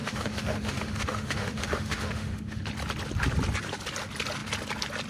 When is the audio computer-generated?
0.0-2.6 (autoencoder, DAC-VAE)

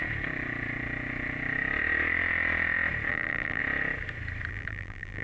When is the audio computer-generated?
3.1-3.6 (vocoder, BigVGAN v2); 4.5-5.2

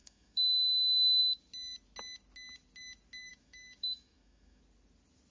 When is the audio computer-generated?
0.0-1.2 (autoencoder, DAC-VAE); 3.3-4.6